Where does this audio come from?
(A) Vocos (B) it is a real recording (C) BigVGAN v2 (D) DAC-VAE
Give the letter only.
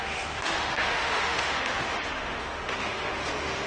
D